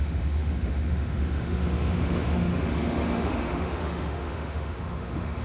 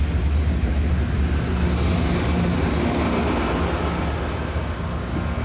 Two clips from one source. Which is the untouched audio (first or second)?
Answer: second